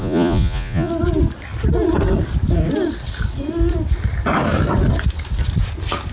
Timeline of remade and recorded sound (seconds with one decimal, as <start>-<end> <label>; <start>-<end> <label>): 0.0-0.9 remade; 0.9-6.1 recorded